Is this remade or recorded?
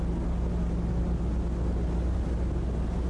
recorded